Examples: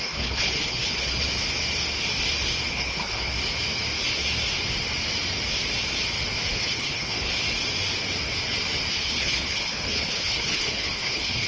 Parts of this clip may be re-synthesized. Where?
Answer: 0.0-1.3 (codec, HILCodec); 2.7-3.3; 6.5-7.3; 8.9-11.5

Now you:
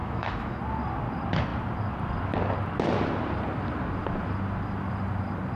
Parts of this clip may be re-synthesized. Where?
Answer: 0.0-0.6 (autoencoder, DAC-VAE)